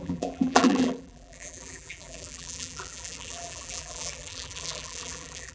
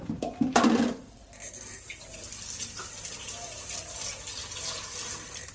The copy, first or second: first